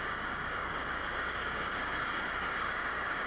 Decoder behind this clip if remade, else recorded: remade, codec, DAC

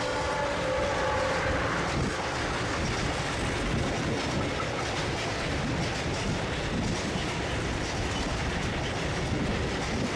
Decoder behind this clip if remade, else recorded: recorded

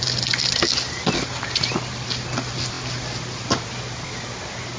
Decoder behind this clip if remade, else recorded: recorded